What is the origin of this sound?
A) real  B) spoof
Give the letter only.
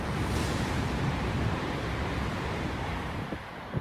B